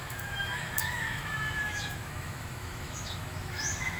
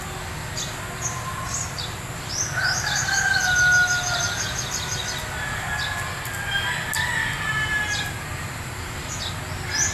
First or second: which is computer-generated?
first